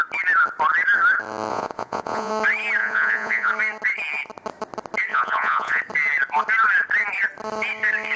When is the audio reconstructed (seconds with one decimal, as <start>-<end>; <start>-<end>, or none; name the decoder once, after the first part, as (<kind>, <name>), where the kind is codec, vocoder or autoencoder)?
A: 1.5-2.3 (vocoder, Vocos); 2.8-3.5; 5.1-5.8